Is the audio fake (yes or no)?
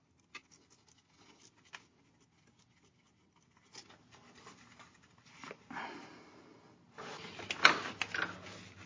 no